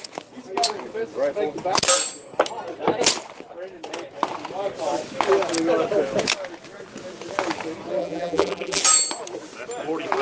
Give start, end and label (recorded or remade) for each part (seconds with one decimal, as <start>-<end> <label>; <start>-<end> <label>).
0.0-8.0 recorded; 8.0-8.8 remade; 8.8-10.2 recorded